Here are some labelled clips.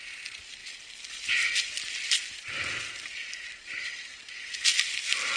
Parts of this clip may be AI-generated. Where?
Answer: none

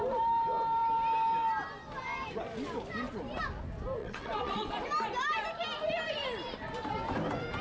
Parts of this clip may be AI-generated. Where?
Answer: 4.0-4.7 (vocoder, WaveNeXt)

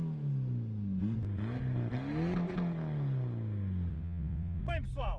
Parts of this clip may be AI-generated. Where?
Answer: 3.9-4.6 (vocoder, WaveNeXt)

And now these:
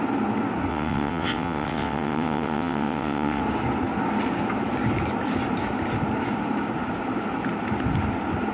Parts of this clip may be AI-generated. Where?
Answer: 0.7-3.4 (vocoder, WaveNeXt)